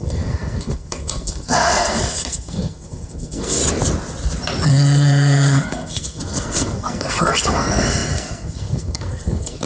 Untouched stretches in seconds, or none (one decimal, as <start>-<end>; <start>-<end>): 3.6-4.7